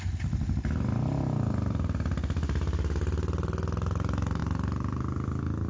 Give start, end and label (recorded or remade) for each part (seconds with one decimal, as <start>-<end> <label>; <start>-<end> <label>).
0.0-5.7 recorded